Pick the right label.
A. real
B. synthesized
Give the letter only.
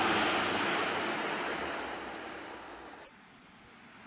A